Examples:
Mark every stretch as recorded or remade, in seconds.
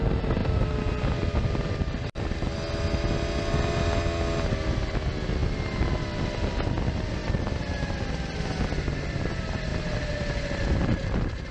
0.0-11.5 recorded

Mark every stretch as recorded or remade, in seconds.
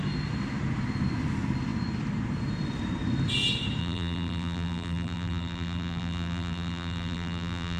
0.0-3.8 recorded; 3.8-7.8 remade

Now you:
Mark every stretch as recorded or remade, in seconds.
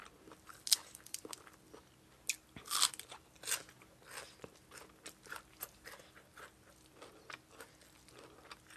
0.0-8.8 recorded